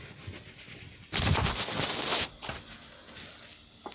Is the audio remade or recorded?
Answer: recorded